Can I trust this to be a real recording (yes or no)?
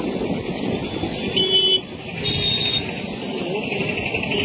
yes